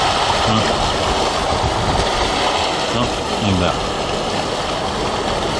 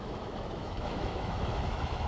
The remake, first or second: second